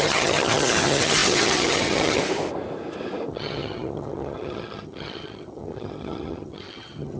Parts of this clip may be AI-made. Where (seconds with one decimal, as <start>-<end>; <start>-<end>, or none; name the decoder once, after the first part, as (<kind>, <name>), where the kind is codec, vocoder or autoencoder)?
0.0-2.2 (vocoder, HiFi-GAN); 3.3-7.2

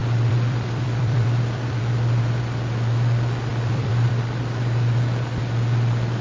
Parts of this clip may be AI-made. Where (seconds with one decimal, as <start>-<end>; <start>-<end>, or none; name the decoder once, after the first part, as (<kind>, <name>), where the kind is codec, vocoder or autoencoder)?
0.0-1.8 (vocoder, BigVGAN v2); 3.5-4.1

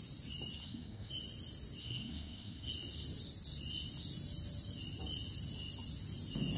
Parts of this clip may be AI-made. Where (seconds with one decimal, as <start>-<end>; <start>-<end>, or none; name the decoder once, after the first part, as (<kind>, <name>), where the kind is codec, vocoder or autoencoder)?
0.6-1.1 (codec, SNAC); 1.8-2.7